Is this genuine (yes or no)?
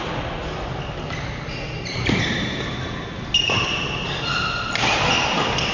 yes